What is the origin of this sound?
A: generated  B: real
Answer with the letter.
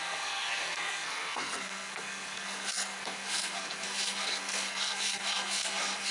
A